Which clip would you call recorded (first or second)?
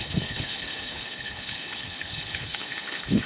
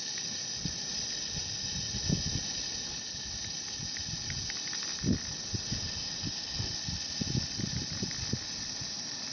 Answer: second